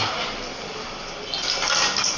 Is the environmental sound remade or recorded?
recorded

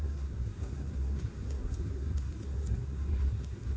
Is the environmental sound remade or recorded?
remade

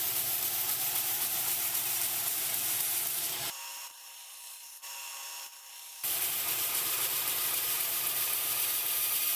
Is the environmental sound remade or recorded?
remade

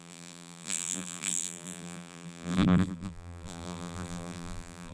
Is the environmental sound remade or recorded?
remade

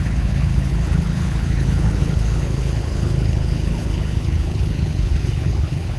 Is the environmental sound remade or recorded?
remade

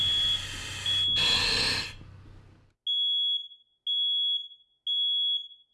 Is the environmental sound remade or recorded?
recorded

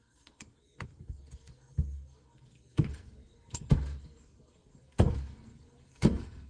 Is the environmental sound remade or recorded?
remade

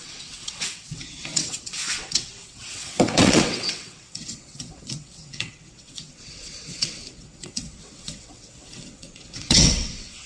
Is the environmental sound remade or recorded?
remade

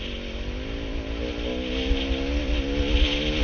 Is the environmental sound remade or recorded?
recorded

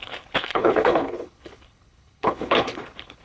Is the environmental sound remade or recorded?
remade